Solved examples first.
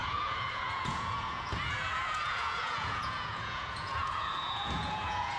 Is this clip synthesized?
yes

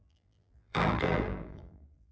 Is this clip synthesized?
yes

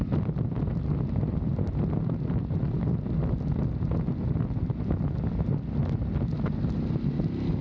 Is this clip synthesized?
no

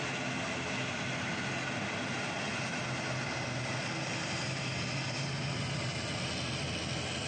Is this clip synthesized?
no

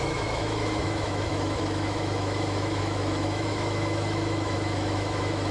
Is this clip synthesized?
yes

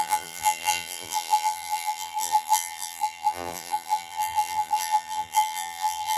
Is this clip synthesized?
yes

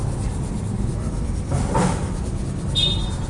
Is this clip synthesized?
no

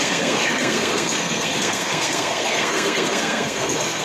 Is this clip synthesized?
yes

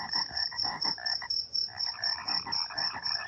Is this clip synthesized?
yes